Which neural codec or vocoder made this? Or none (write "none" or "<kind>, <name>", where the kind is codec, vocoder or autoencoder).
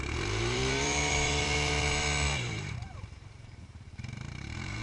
vocoder, BigVGAN v2